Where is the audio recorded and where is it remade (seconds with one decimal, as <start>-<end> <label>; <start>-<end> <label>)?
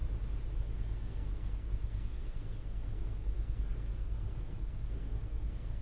0.0-0.6 recorded; 0.6-5.8 remade